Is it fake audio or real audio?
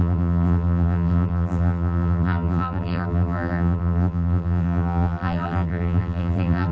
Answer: fake